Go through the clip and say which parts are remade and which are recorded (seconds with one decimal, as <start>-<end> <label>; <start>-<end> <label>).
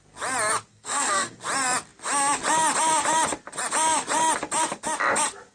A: 0.0-0.7 recorded; 0.7-1.4 remade; 1.4-5.5 recorded